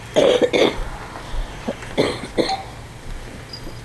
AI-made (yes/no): no